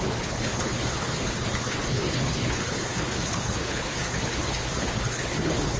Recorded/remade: remade